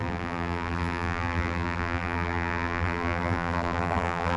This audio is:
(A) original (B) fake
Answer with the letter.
B